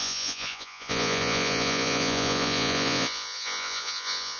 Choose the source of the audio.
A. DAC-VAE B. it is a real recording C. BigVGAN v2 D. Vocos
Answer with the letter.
D